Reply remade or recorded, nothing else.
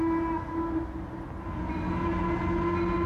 recorded